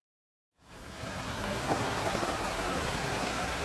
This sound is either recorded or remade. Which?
remade